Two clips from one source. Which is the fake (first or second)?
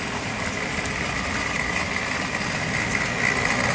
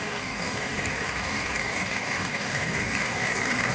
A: second